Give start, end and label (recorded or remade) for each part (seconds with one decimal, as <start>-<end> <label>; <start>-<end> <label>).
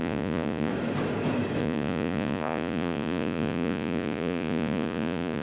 0.0-0.7 remade; 0.7-1.6 recorded; 1.6-5.4 remade